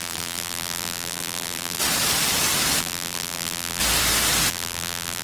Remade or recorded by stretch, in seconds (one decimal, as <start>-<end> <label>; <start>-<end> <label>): 0.0-1.8 remade; 1.8-2.8 recorded; 2.8-3.8 remade; 3.8-4.5 recorded; 4.5-5.2 remade